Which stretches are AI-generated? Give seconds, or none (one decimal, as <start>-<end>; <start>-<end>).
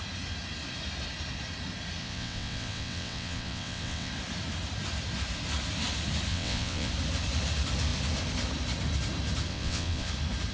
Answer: 2.0-4.1; 6.3-6.9; 9.5-10.1